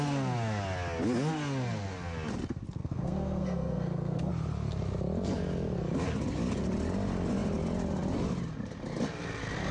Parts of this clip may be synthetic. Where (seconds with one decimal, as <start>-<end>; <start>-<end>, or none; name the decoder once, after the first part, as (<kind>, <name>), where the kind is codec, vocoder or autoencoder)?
2.8-4.3 (codec, SNAC)